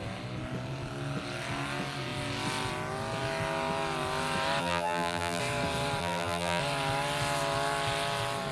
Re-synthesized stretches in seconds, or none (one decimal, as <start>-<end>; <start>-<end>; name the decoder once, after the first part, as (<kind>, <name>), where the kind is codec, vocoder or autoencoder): 4.6-5.4 (vocoder, BigVGAN v2); 6.0-6.6